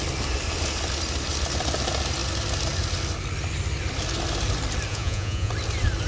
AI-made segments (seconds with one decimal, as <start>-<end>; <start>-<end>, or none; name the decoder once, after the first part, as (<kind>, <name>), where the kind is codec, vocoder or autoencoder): 4.9-5.5 (vocoder, Vocos)